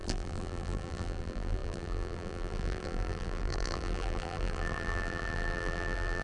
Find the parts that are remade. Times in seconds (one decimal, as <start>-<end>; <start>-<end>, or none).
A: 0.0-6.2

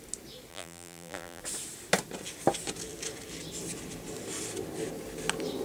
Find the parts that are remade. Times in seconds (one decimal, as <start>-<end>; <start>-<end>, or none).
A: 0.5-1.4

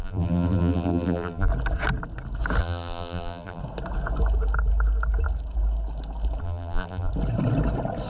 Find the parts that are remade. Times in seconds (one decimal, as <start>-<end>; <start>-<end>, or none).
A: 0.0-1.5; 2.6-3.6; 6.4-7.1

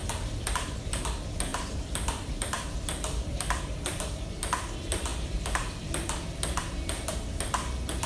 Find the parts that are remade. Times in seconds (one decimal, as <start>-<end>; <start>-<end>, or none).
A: 1.5-3.6; 5.1-6.6